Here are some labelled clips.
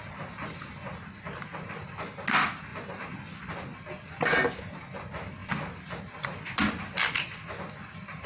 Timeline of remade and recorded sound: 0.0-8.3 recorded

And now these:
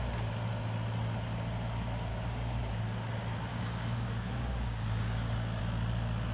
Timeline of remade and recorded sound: 0.0-2.1 recorded; 2.1-2.8 remade; 2.8-3.5 recorded; 3.5-5.6 remade; 5.6-6.3 recorded

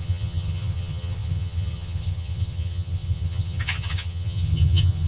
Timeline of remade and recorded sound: 0.0-5.1 remade